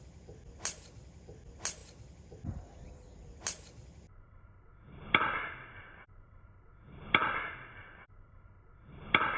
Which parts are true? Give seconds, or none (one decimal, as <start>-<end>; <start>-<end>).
0.0-9.4